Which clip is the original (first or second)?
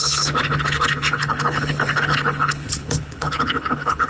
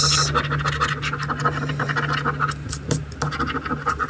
second